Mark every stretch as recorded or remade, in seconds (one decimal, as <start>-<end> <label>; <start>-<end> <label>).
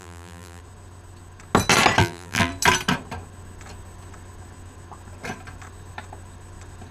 0.0-0.6 remade; 0.6-2.0 recorded; 2.0-2.5 remade; 2.5-6.9 recorded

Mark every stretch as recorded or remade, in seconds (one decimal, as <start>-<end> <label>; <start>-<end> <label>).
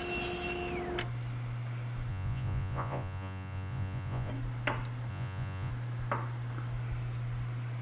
0.0-2.1 recorded; 2.1-4.3 remade; 4.3-5.1 recorded; 5.1-5.7 remade; 5.7-7.8 recorded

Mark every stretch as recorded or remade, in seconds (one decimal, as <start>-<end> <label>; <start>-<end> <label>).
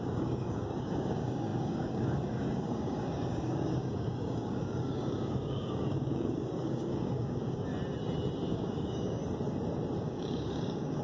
0.0-7.7 remade; 7.7-8.5 recorded; 8.5-9.2 remade; 9.2-10.0 recorded; 10.0-11.0 remade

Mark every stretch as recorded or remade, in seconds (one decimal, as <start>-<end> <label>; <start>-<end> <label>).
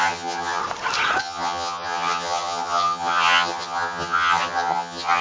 0.0-0.6 remade; 0.6-1.2 recorded; 1.2-5.2 remade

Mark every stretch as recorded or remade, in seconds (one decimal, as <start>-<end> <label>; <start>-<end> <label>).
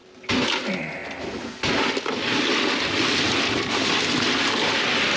0.0-5.2 recorded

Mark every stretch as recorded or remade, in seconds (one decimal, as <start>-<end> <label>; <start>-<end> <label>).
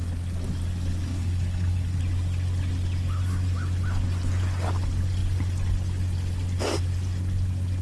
0.0-1.1 recorded; 1.1-2.0 remade; 2.0-7.8 recorded